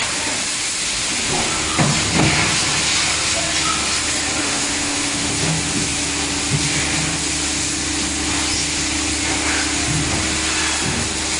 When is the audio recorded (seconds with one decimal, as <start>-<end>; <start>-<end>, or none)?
0.0-4.4; 5.3-11.4